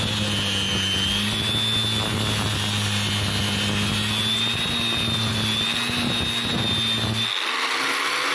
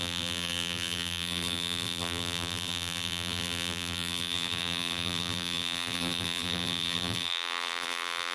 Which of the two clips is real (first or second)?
first